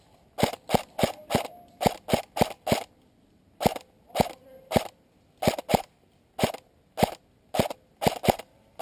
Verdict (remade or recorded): recorded